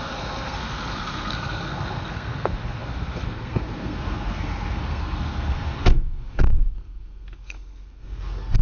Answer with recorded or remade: remade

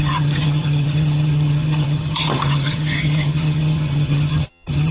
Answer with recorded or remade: remade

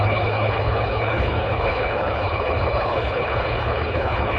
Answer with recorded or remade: remade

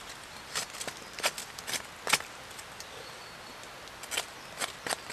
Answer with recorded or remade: recorded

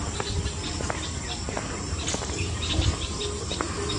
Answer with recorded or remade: remade